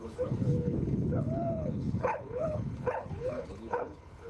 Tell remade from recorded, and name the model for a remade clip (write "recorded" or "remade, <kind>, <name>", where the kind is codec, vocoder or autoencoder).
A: remade, codec, HILCodec